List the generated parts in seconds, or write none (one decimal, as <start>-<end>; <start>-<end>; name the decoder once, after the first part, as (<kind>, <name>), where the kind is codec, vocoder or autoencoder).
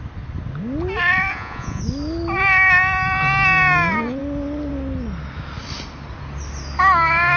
1.3-1.8 (vocoder, Vocos)